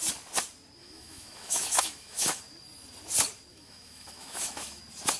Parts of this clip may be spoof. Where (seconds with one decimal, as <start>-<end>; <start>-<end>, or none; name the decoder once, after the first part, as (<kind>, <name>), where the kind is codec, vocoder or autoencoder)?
0.8-2.4 (autoencoder, DAC-VAE); 3.5-4.8